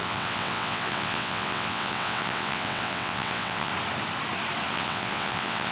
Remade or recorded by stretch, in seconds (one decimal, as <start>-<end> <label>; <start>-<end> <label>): 0.0-3.7 remade; 3.7-4.7 recorded; 4.7-5.7 remade